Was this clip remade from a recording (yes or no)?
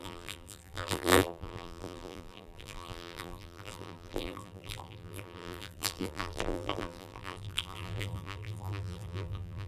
yes